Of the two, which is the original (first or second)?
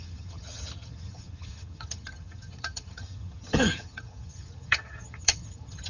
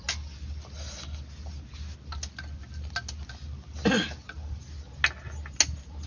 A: second